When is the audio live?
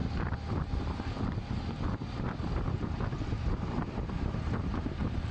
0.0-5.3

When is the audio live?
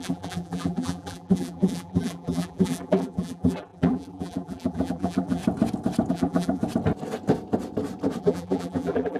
5.4-6.1; 6.6-8.2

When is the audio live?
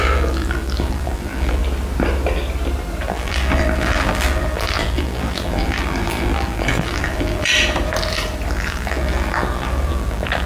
1.6-3.1; 7.5-8.5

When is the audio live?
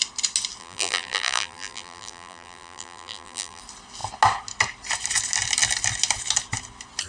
0.0-0.6; 3.6-7.1